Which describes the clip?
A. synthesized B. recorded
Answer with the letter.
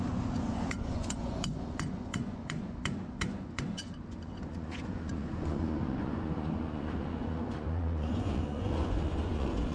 A